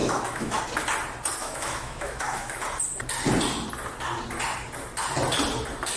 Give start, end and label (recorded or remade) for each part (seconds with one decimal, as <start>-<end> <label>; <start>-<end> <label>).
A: 0.0-0.6 remade; 0.6-1.4 recorded; 1.4-2.6 remade; 2.6-6.0 recorded

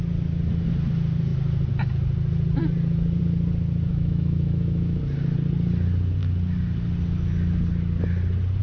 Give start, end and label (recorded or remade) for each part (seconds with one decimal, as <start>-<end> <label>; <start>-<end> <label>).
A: 0.0-3.9 recorded; 3.9-5.0 remade; 5.0-8.6 recorded

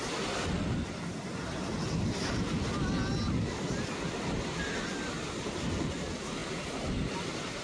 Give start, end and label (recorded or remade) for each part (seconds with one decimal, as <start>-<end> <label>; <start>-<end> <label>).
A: 0.0-7.6 recorded

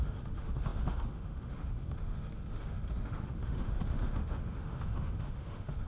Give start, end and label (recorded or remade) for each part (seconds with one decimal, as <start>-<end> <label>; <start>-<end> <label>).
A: 0.0-5.9 remade

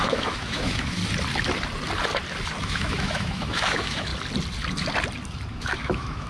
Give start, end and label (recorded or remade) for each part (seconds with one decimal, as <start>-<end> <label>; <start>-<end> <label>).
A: 0.0-1.0 remade; 1.0-2.6 recorded; 2.6-4.1 remade; 4.1-5.5 recorded; 5.5-6.3 remade

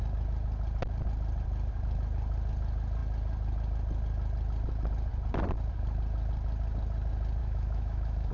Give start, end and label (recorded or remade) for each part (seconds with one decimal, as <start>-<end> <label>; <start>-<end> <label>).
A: 0.0-7.4 recorded; 7.4-8.3 remade

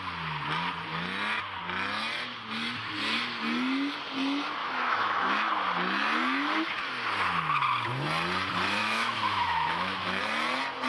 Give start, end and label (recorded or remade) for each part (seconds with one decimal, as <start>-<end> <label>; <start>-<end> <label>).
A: 0.0-4.6 recorded; 4.6-5.5 remade; 5.5-8.8 recorded; 8.8-10.2 remade; 10.2-10.9 recorded